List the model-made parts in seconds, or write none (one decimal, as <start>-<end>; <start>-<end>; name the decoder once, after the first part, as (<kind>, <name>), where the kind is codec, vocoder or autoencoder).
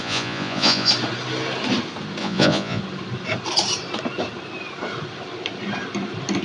0.0-0.9 (vocoder, Vocos); 2.2-2.8